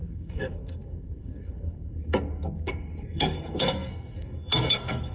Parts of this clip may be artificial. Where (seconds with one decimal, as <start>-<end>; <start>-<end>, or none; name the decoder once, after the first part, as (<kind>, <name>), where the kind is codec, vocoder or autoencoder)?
0.0-5.1 (codec, SNAC)